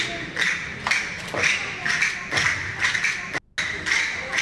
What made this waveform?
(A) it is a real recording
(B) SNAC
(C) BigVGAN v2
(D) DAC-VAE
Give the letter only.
A